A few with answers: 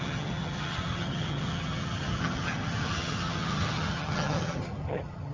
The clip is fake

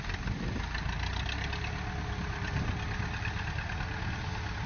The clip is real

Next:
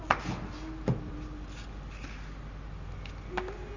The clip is real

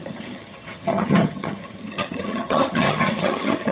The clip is fake